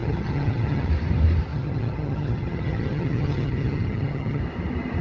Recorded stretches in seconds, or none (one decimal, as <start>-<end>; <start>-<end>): 0.9-1.5; 4.4-5.0

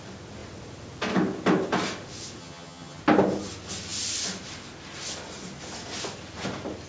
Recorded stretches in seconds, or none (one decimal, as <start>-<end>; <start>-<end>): 0.0-2.4; 3.0-6.9